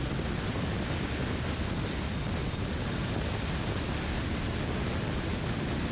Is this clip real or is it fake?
real